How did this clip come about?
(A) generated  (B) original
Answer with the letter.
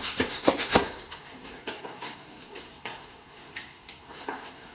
A